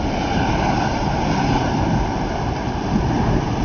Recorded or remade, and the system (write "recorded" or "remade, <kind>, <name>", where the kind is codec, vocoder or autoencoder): recorded